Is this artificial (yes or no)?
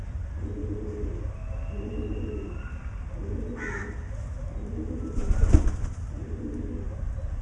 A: no